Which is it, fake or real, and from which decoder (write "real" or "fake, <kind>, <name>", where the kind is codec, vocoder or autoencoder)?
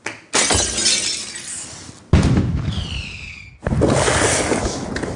real